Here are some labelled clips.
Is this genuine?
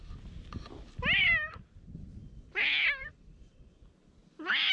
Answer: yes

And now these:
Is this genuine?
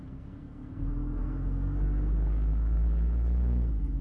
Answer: no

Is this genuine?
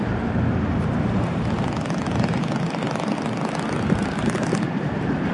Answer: yes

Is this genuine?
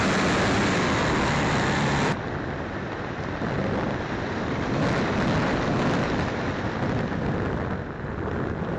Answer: yes